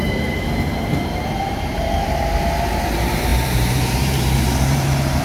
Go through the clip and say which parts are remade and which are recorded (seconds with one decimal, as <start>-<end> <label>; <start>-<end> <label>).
0.0-5.2 remade